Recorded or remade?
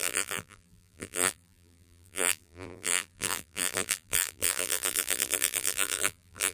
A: remade